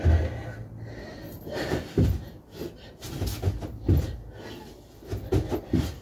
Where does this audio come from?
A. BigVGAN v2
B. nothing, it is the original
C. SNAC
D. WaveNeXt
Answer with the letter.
B